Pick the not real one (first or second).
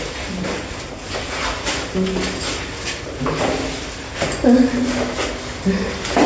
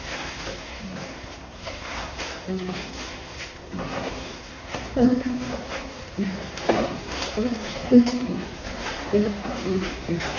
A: second